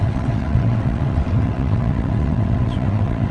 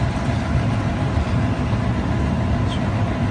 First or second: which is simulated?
first